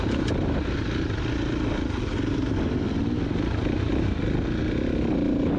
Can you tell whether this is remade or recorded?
recorded